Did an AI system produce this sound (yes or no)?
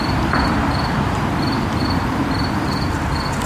no